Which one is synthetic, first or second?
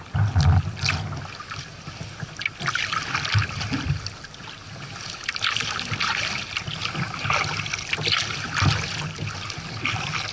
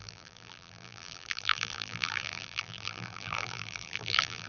second